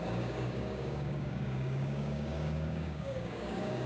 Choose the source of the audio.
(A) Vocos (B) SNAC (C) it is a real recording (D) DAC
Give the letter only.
D